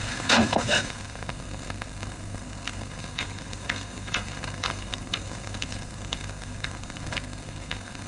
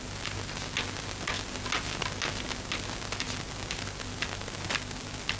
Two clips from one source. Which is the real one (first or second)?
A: second